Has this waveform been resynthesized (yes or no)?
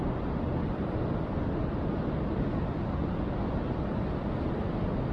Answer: no